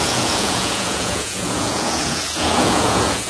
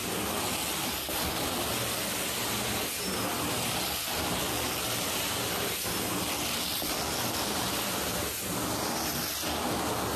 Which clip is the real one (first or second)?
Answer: second